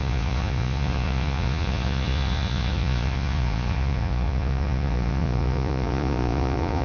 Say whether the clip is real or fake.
fake